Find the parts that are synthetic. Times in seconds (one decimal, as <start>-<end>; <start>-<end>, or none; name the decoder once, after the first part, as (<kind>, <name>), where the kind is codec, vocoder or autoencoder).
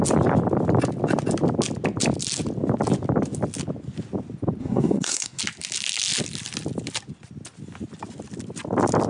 4.6-5.4 (codec, SNAC)